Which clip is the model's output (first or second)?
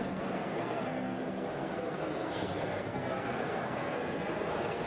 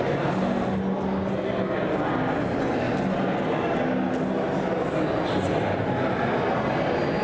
first